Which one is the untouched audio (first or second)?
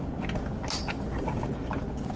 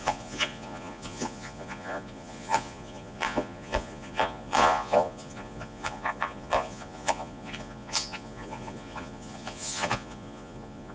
first